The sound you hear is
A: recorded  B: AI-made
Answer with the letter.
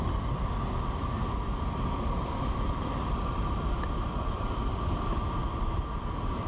B